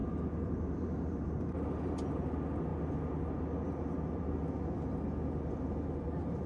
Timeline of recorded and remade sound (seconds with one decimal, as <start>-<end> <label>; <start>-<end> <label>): 0.0-1.9 remade; 1.9-6.5 recorded